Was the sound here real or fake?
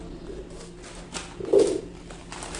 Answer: real